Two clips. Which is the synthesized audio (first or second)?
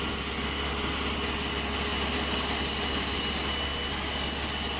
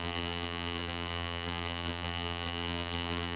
second